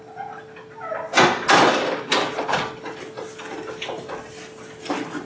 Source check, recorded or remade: recorded